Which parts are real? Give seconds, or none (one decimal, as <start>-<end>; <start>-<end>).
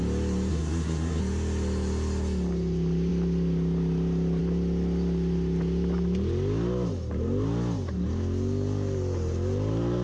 0.0-0.5; 1.2-10.0